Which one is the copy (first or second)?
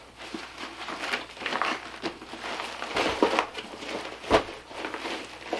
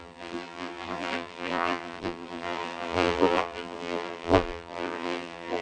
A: second